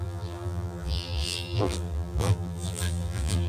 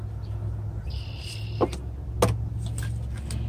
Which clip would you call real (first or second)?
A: second